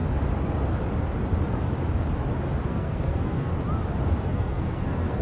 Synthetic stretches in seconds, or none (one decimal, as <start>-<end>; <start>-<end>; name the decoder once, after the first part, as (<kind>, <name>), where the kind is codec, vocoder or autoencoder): 2.6-3.5 (codec, SNAC); 4.2-5.2